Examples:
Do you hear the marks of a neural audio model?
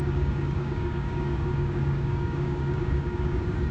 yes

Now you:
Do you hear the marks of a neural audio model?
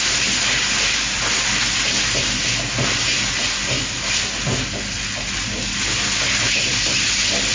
no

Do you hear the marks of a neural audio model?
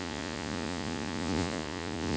yes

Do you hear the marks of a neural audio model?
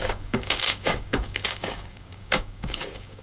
yes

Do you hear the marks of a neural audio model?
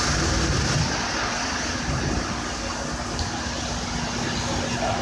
no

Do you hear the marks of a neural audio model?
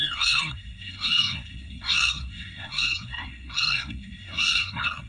yes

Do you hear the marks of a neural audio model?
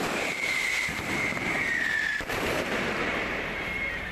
yes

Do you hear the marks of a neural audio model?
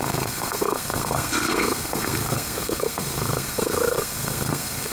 yes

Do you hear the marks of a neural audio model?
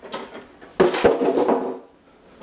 no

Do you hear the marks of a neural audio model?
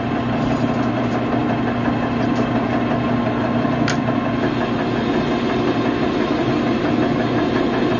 no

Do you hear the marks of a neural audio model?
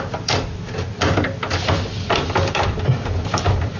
yes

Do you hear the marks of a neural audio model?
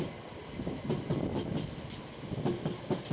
no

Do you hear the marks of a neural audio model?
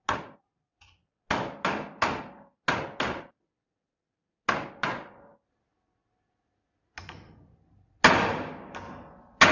no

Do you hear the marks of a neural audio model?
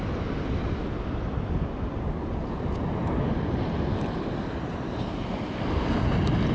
no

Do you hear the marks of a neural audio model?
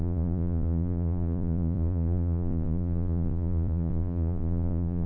yes